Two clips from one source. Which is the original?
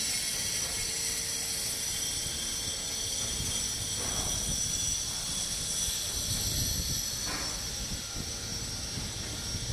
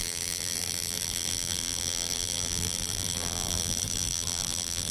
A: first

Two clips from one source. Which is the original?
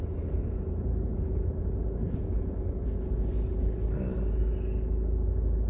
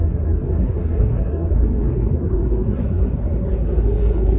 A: first